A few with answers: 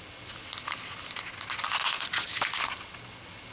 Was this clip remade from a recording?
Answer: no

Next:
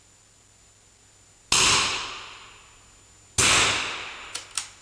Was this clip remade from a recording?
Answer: no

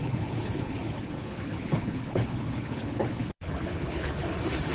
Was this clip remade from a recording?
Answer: yes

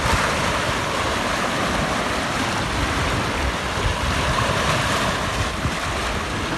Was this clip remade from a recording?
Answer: no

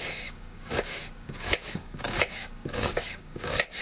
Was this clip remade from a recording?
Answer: yes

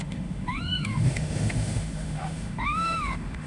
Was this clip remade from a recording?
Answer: yes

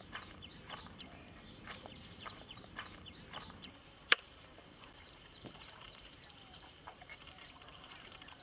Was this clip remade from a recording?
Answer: yes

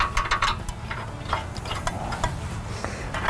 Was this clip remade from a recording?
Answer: no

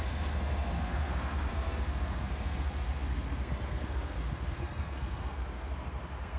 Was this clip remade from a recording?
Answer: yes